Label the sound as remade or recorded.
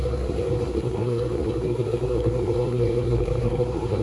remade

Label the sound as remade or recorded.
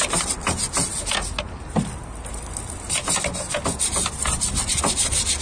recorded